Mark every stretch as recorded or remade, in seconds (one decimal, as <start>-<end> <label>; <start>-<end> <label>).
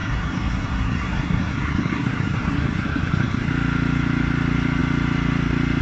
0.0-3.5 remade; 3.5-5.8 recorded